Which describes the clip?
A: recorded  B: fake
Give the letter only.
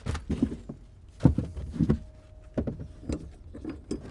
A